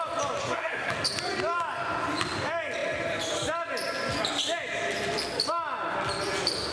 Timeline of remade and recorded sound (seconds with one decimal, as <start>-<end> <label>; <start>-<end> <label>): 0.0-0.4 recorded; 0.4-0.9 remade; 0.9-6.7 recorded